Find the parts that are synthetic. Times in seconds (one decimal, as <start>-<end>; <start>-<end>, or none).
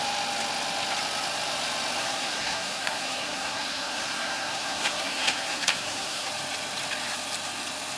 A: 2.0-6.3